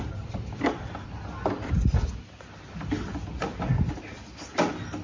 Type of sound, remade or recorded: recorded